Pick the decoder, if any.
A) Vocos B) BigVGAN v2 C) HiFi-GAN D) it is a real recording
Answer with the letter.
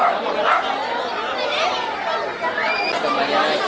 D